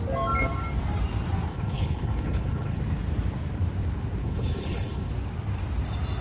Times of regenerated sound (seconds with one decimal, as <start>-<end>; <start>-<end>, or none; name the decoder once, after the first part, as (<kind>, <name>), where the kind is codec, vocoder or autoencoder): 1.5-2.8 (codec, HILCodec); 4.2-5.1